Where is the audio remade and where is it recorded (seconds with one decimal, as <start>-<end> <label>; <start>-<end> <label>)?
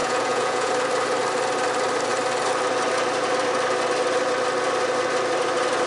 0.0-0.7 remade; 0.7-5.9 recorded